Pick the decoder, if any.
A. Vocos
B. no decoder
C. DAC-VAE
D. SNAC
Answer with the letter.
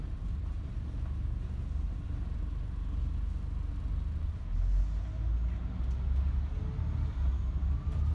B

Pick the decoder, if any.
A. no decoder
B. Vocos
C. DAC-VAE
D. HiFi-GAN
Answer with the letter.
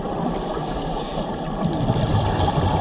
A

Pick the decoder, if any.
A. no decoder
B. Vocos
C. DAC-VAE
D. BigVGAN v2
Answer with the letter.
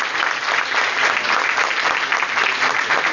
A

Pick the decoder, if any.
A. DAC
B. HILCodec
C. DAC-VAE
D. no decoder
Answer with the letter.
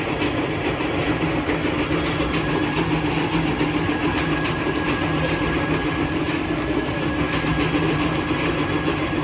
D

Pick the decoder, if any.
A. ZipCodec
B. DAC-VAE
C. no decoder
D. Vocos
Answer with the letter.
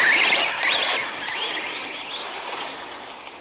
C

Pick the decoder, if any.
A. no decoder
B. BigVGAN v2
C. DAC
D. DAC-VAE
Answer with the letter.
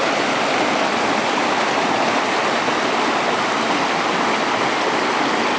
A